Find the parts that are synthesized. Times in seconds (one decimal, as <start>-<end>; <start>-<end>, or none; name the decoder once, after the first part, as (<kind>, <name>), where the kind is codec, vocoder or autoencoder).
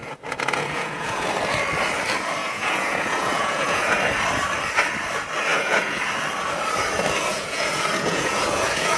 0.0-1.3 (vocoder, Vocos); 2.4-4.0; 5.5-6.0; 7.3-9.0